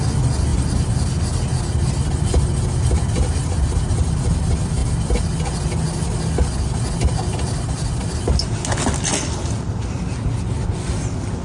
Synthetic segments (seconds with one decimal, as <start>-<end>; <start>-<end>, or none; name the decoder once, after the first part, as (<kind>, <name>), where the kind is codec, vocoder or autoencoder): none